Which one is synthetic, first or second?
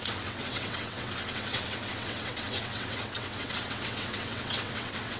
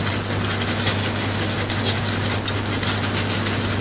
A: first